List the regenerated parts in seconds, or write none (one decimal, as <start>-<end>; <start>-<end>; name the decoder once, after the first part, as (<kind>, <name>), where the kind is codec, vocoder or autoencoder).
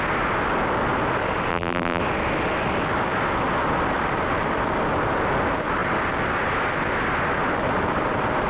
1.5-2.0 (vocoder, BigVGAN v2)